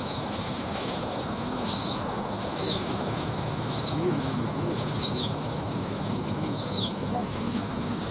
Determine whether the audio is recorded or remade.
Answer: remade